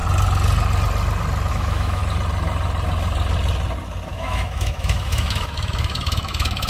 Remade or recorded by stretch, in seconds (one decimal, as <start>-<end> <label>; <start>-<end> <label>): 0.0-1.5 recorded; 1.5-2.0 remade; 2.0-4.1 recorded; 4.1-6.7 remade